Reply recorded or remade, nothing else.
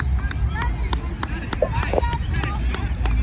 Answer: recorded